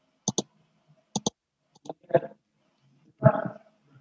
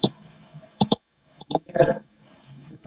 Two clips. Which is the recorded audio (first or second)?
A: first